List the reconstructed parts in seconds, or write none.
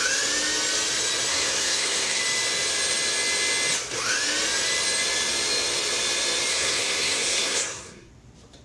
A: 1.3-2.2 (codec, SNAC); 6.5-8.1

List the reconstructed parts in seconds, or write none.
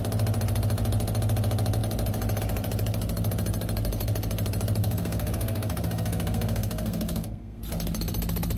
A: 4.8-7.6 (codec, SNAC)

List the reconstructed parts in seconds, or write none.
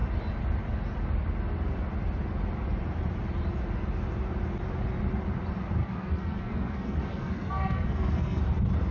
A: 5.8-8.4 (codec, SNAC)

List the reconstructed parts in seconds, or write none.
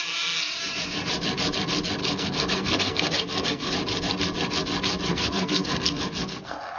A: 2.0-3.7 (codec, SNAC); 5.1-6.8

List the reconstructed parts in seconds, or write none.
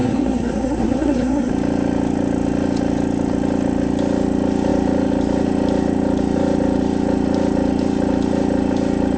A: 0.0-1.5 (codec, SNAC)